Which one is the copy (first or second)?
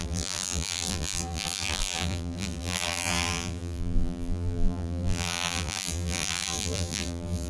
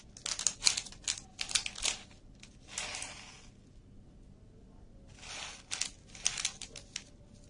first